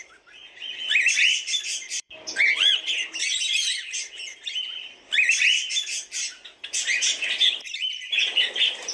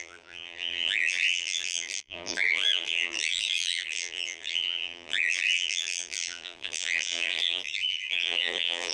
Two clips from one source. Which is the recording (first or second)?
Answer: first